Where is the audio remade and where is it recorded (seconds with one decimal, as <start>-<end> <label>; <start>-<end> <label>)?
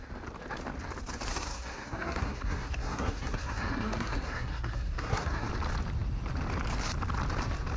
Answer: 0.0-1.3 recorded; 1.3-5.5 remade; 5.5-7.8 recorded